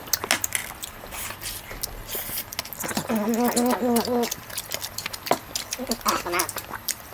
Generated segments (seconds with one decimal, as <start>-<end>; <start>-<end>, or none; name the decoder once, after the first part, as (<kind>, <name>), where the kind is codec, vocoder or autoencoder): none